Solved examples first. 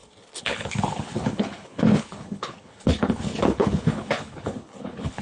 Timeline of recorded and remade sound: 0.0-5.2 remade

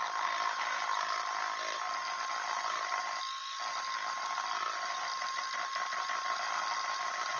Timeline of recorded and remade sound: 0.0-7.4 recorded